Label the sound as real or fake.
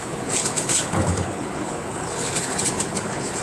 fake